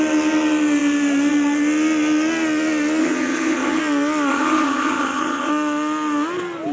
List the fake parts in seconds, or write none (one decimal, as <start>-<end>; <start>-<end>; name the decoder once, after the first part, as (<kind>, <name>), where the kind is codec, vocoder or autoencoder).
3.0-3.8 (vocoder, HiFi-GAN); 4.3-5.5